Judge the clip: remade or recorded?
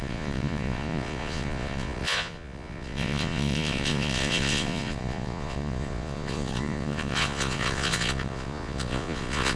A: remade